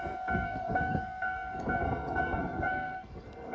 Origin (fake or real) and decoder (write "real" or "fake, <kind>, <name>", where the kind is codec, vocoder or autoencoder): fake, codec, SNAC